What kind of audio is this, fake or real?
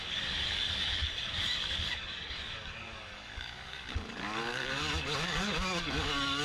fake